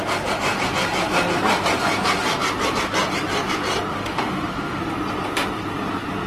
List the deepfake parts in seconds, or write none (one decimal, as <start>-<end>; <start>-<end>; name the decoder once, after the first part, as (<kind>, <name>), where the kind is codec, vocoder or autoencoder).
3.9-4.8 (autoencoder, DAC-VAE)